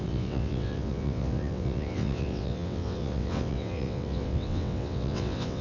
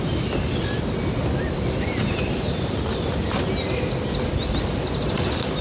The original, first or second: second